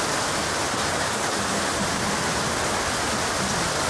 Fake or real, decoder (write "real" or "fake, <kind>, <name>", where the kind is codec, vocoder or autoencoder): real